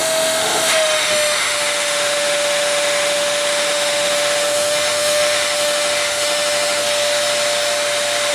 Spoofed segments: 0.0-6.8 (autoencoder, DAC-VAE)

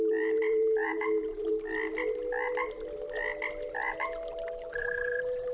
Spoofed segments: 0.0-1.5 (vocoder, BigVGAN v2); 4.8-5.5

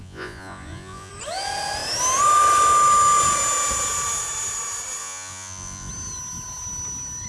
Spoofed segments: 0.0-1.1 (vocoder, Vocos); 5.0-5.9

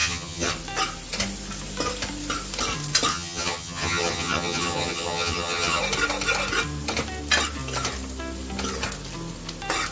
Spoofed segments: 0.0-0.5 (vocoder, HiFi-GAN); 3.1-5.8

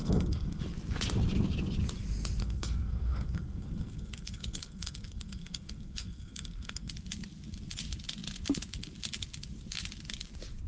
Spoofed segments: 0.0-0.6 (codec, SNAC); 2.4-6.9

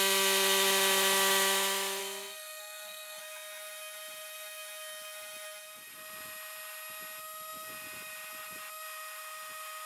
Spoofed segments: 2.0-3.2 (codec, SNAC)